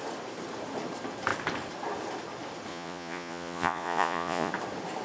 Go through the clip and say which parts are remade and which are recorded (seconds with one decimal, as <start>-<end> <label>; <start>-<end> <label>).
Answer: 0.0-2.7 recorded; 2.7-4.5 remade; 4.5-5.0 recorded